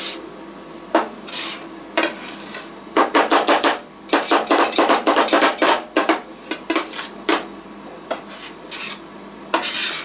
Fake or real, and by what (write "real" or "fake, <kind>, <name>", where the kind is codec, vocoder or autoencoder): real